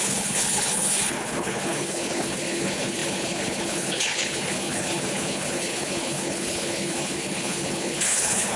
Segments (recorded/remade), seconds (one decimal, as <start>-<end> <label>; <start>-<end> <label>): 0.0-8.6 remade